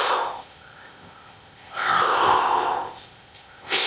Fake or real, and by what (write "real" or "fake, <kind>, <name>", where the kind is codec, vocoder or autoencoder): fake, codec, ZipCodec